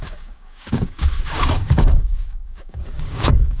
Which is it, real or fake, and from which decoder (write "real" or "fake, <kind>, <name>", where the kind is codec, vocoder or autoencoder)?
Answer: fake, codec, DAC